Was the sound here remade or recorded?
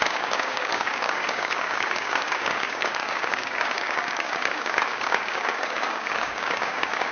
remade